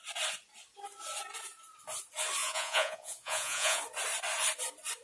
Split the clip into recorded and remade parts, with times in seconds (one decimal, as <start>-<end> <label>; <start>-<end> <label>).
0.0-2.4 recorded; 2.4-3.8 remade; 3.8-5.0 recorded